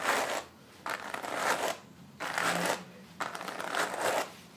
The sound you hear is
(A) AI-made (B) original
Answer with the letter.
A